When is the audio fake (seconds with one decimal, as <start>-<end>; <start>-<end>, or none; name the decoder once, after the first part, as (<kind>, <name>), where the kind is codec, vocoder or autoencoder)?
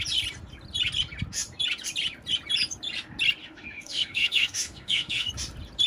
3.4-5.3 (autoencoder, DAC-VAE)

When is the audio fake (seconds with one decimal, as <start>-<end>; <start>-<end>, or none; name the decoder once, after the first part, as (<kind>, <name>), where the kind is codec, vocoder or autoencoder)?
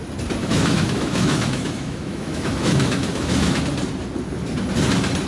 0.4-3.6 (autoencoder, DAC-VAE)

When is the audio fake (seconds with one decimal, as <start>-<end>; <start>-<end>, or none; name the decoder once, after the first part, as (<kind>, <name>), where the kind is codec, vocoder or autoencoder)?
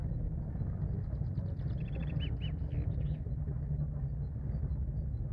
none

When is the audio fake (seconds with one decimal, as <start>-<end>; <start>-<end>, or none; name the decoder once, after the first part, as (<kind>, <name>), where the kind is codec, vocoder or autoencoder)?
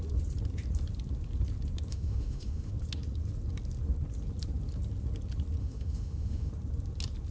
1.9-2.7 (autoencoder, DAC-VAE); 5.6-6.5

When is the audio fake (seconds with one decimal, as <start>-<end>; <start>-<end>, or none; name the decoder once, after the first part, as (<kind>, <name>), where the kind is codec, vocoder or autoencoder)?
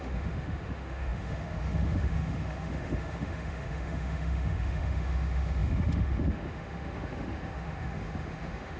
0.0-8.8 (autoencoder, DAC-VAE)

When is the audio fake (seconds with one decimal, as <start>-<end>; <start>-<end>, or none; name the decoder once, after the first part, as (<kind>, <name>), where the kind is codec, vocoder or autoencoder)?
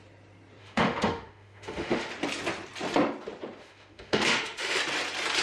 0.6-2.1 (autoencoder, DAC-VAE); 3.6-4.8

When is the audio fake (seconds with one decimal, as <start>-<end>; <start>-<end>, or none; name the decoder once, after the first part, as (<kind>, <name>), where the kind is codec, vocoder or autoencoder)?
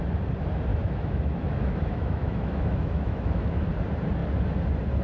0.7-3.7 (autoencoder, DAC-VAE)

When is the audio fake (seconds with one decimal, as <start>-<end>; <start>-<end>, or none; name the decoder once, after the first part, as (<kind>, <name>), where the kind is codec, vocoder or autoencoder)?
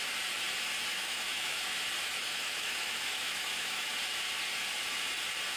0.9-1.6 (autoencoder, DAC-VAE); 2.0-4.0